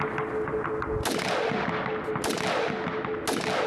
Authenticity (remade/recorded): recorded